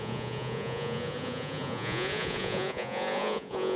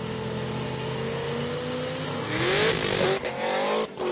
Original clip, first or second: second